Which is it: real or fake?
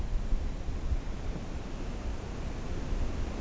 real